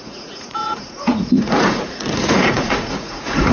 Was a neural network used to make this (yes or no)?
yes